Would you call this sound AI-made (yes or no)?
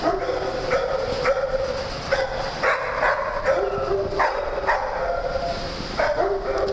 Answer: no